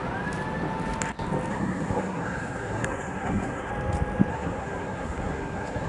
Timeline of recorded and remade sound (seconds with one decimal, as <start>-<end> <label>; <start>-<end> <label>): 0.0-1.5 recorded; 1.5-3.7 remade; 3.7-4.3 recorded; 4.3-5.9 remade